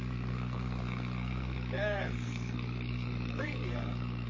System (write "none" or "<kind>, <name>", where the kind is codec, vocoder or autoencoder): codec, SNAC